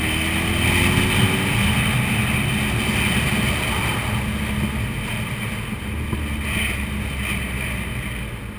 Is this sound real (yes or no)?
yes